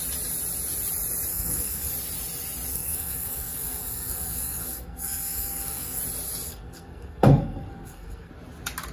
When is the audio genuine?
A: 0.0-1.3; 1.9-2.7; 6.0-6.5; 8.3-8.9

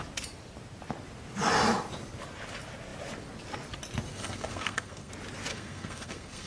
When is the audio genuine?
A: 0.0-4.1; 5.1-5.5